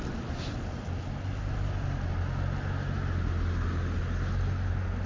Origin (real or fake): real